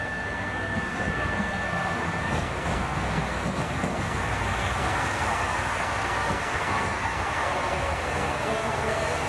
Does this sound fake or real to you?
fake